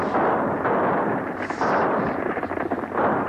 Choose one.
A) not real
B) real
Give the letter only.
B